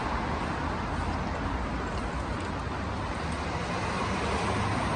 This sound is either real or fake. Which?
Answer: real